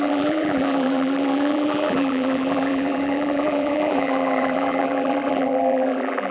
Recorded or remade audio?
remade